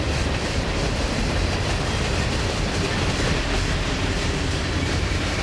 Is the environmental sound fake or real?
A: real